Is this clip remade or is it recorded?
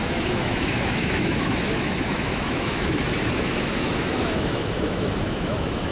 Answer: remade